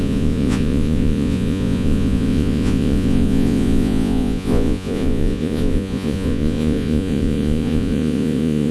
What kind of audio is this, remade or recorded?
remade